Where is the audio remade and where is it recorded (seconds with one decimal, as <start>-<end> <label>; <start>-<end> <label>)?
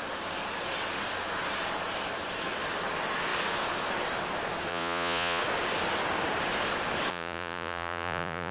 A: 0.0-4.7 recorded; 4.7-5.4 remade; 5.4-7.1 recorded; 7.1-8.5 remade